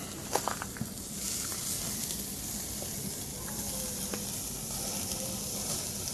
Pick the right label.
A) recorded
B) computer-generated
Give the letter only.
A